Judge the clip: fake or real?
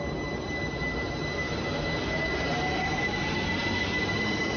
real